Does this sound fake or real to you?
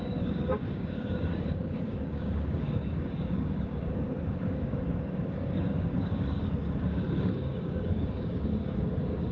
fake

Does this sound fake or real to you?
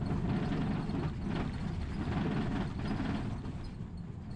real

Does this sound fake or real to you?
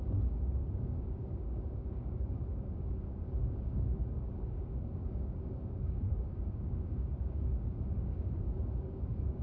fake